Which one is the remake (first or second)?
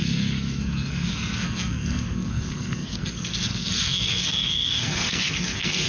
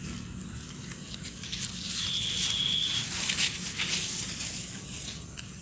first